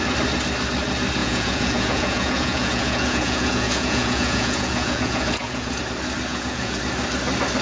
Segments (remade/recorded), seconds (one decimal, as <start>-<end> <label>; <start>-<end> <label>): 0.0-1.2 recorded; 1.2-5.8 remade; 5.8-6.3 recorded; 6.3-6.8 remade; 6.8-7.6 recorded